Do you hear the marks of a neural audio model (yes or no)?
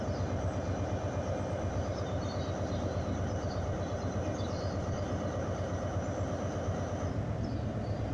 no